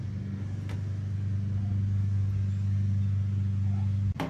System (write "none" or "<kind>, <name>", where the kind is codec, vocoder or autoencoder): none